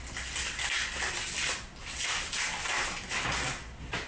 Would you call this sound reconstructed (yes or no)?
no